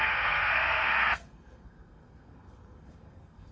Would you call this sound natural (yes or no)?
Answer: no